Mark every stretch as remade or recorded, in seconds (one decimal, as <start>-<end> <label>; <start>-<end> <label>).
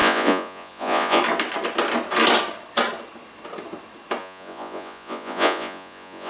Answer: 0.0-1.2 remade; 1.2-4.2 recorded; 4.2-6.3 remade